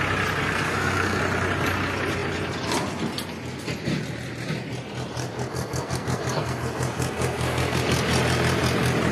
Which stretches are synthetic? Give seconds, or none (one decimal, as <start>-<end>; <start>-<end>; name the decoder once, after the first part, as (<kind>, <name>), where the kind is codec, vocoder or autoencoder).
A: 0.4-1.2 (codec, SNAC); 5.2-7.8